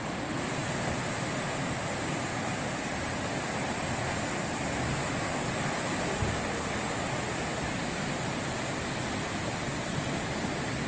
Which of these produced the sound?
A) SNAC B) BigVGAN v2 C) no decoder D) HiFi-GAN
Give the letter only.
C